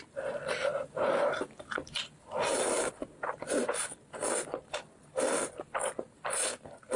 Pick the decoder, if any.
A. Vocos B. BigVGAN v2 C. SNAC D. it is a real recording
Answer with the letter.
D